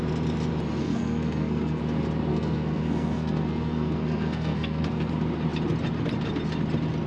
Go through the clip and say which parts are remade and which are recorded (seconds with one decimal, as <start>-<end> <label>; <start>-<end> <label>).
0.0-0.8 recorded; 0.8-1.8 remade; 1.8-2.3 recorded; 2.3-5.1 remade; 5.1-7.1 recorded